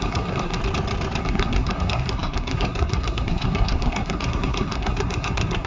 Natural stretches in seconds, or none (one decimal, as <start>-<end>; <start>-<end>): 0.6-1.2